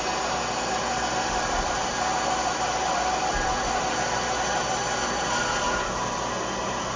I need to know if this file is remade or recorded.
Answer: recorded